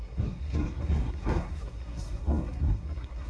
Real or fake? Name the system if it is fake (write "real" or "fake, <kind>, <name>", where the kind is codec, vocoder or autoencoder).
fake, codec, SNAC